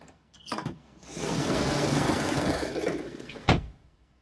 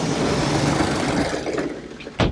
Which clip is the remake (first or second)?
first